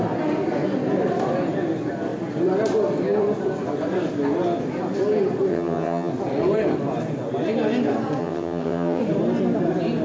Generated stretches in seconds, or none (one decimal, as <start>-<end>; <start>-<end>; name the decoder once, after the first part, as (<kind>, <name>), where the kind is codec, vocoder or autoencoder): 5.5-6.1 (vocoder, HiFi-GAN); 8.2-9.0